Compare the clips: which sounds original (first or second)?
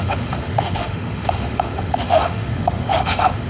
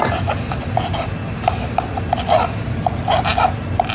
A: second